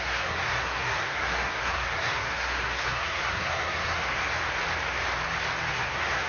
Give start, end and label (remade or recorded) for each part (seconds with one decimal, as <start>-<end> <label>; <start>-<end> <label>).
0.0-4.2 remade; 4.2-5.7 recorded; 5.7-6.3 remade